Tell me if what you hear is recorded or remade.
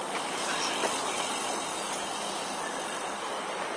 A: recorded